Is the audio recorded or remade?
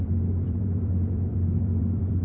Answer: remade